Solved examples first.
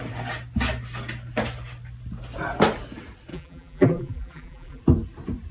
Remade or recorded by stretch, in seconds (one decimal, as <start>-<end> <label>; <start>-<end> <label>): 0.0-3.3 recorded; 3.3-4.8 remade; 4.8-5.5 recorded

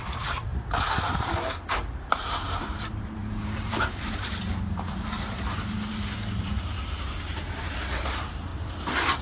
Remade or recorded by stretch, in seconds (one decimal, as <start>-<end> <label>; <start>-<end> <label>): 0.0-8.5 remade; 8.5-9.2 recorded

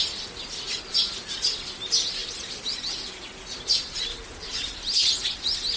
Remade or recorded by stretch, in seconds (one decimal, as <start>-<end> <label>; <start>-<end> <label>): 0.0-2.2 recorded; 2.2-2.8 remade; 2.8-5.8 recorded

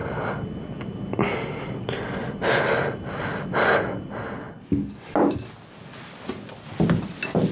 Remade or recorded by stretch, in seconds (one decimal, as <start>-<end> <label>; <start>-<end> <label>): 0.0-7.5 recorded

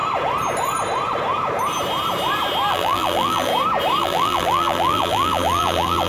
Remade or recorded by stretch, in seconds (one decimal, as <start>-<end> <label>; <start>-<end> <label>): 0.0-2.7 recorded; 2.7-3.5 remade; 3.5-4.0 recorded; 4.0-6.1 remade

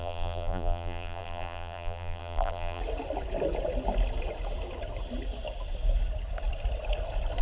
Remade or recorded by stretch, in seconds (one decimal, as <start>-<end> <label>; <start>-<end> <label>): 0.0-2.8 remade; 2.8-7.4 recorded

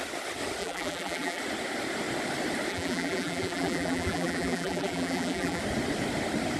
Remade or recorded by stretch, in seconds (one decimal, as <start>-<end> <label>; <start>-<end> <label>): 0.0-0.6 recorded; 0.6-1.4 remade; 1.4-2.7 recorded; 2.7-5.6 remade; 5.6-6.6 recorded

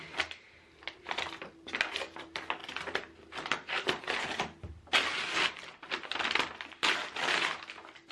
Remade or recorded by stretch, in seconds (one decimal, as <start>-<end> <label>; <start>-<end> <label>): 0.0-8.1 recorded